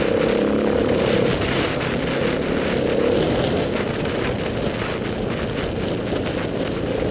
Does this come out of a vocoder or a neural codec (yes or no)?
no